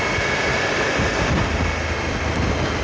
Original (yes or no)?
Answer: no